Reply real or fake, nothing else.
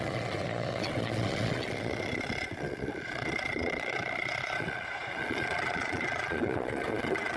fake